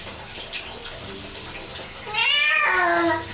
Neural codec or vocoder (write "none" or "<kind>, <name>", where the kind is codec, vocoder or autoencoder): none